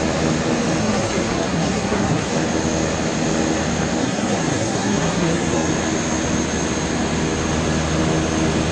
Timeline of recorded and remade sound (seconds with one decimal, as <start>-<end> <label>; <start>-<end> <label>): 0.0-0.8 recorded; 0.8-2.3 remade; 2.3-4.0 recorded; 4.0-5.7 remade; 5.7-8.7 recorded